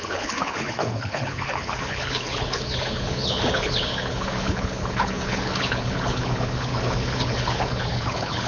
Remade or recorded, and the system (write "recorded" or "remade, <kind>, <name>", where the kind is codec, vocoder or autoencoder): remade, codec, HILCodec